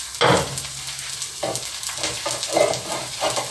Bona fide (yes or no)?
yes